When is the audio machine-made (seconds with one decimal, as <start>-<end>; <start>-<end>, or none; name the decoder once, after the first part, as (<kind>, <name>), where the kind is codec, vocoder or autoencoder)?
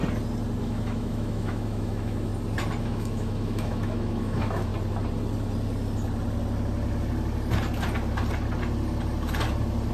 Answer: 0.6-2.3 (autoencoder, DAC-VAE); 2.8-4.7